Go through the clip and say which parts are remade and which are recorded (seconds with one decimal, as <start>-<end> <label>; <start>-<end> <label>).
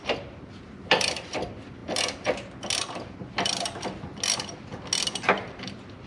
0.0-1.8 remade; 1.8-5.5 recorded; 5.5-6.1 remade